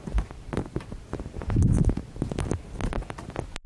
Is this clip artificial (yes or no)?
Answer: no